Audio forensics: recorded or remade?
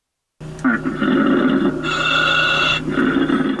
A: recorded